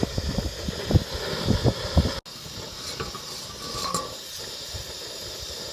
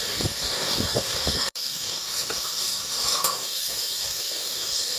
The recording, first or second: first